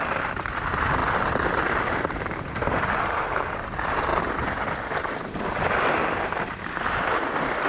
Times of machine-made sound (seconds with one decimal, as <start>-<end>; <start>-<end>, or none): 1.0-2.2